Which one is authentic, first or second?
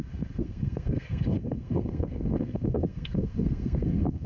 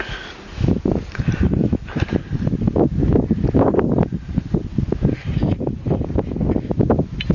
second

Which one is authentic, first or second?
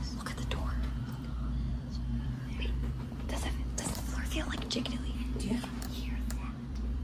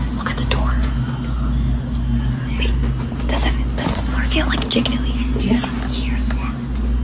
second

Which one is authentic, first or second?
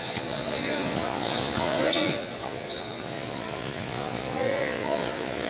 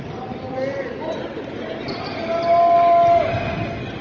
second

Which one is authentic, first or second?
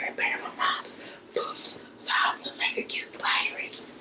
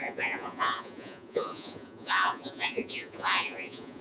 first